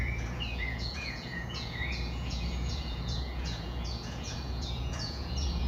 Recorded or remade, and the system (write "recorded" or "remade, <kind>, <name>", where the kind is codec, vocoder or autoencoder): remade, vocoder, Vocos